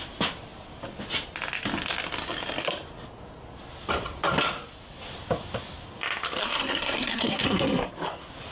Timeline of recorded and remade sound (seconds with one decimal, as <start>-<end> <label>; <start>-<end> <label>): 0.0-6.4 recorded; 6.4-7.9 remade; 7.9-8.5 recorded